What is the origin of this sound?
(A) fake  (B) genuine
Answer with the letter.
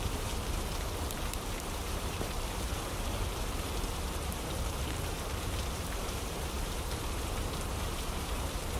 A